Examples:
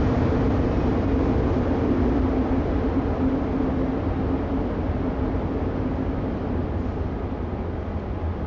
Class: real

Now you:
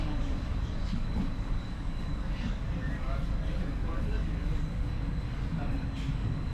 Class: fake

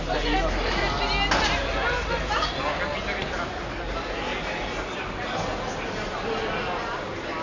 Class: real